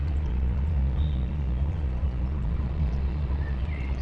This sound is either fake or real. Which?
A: fake